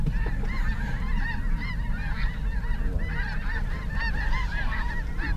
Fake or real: real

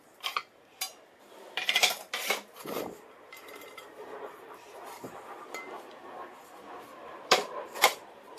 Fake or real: fake